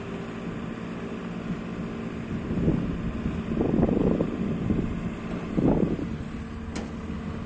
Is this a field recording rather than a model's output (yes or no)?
yes